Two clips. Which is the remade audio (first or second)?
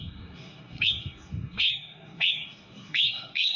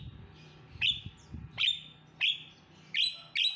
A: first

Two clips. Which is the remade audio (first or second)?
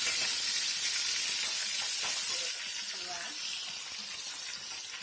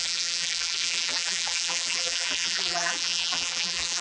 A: second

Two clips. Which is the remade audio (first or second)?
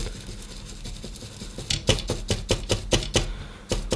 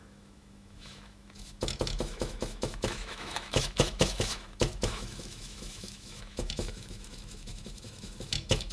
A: second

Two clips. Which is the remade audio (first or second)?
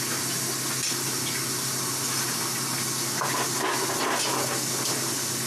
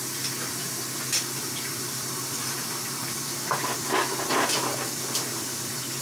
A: second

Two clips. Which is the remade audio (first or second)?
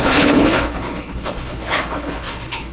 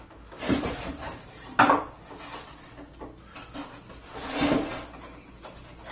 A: first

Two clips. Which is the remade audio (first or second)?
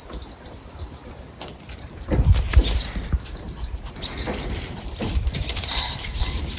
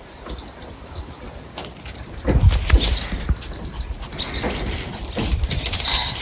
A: first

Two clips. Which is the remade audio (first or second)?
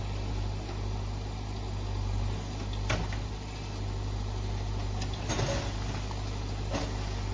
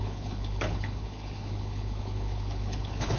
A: second